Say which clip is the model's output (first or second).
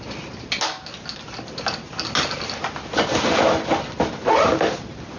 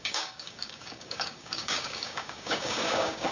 second